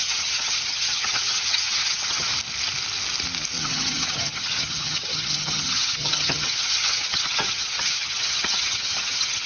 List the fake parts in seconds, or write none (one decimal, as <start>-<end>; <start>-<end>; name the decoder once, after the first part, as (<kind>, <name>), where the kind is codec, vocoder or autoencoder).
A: 0.0-2.3 (vocoder, HiFi-GAN); 3.6-9.5